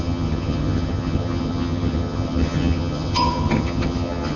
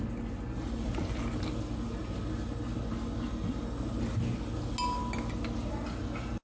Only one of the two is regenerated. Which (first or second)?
first